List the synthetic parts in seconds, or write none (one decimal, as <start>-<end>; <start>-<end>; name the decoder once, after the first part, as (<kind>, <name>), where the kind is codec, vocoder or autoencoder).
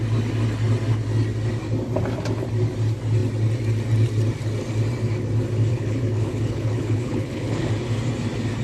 5.7-7.7 (codec, HILCodec)